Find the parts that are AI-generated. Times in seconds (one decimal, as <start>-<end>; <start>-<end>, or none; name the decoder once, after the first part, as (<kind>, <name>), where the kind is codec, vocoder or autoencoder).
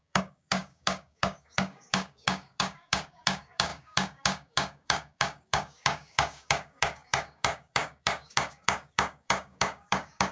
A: 0.0-10.3 (codec, DAC)